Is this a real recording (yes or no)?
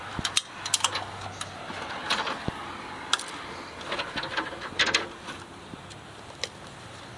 yes